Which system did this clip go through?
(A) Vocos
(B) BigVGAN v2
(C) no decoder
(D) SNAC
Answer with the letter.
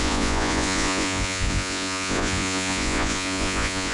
A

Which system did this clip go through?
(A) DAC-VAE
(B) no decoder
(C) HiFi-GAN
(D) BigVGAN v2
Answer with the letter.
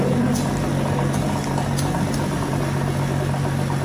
B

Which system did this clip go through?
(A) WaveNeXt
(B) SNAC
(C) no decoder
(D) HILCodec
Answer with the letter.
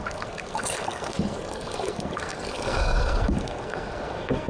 B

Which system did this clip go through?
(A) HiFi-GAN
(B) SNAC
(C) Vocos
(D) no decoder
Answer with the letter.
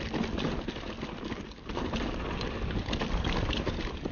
D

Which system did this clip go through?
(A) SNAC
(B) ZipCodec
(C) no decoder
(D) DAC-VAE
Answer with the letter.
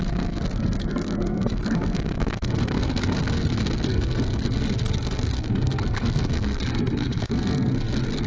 A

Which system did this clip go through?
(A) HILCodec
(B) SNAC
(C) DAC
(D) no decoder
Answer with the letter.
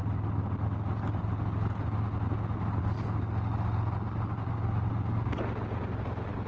D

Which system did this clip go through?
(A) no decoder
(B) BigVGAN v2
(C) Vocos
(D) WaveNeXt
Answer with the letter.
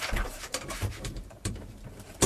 B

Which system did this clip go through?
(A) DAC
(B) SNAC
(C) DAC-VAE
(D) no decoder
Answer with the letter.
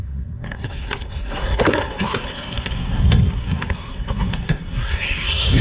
B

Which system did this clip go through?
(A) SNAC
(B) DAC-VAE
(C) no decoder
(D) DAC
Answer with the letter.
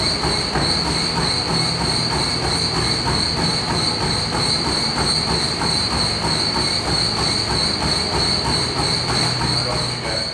C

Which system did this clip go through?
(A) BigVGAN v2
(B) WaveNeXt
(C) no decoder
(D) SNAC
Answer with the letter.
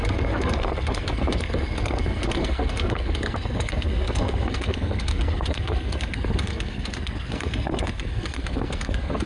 D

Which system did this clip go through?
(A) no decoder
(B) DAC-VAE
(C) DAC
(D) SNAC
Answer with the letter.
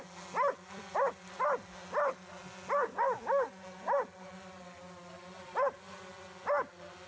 A